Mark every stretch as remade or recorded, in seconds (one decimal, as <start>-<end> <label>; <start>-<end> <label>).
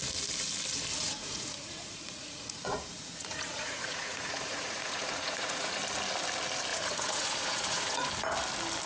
0.0-1.0 recorded; 1.0-5.8 remade; 5.8-6.7 recorded; 6.7-8.1 remade; 8.1-8.9 recorded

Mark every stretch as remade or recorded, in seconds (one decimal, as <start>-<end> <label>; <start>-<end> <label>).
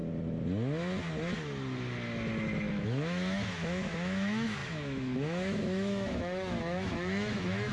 0.0-2.7 recorded; 2.7-7.7 remade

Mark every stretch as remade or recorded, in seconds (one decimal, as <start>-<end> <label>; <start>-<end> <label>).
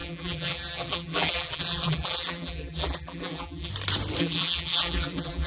0.0-3.7 remade; 3.7-4.2 recorded; 4.2-5.5 remade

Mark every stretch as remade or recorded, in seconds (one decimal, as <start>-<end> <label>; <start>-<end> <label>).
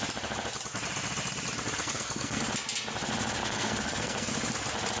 0.0-1.8 recorded; 1.8-2.4 remade; 2.4-3.4 recorded; 3.4-4.3 remade; 4.3-5.0 recorded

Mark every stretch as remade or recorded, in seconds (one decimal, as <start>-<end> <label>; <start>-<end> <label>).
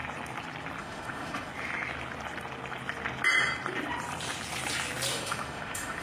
0.0-0.8 recorded; 0.8-1.5 remade; 1.5-5.1 recorded; 5.1-6.0 remade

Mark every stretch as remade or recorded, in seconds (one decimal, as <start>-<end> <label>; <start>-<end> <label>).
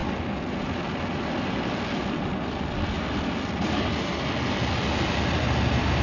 0.0-6.0 recorded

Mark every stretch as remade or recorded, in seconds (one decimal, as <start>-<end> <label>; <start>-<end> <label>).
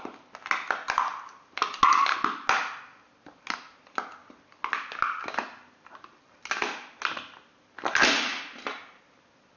0.0-9.6 recorded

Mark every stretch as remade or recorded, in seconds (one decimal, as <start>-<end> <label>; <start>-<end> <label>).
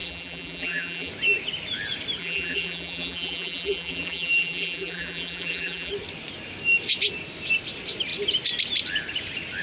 0.0-1.1 remade; 1.1-2.2 recorded; 2.2-5.9 remade; 5.9-9.6 recorded